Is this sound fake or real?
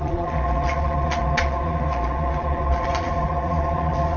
fake